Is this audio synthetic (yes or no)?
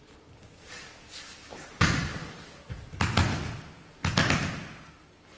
no